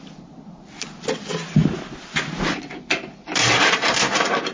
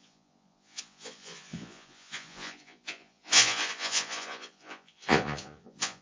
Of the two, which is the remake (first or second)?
second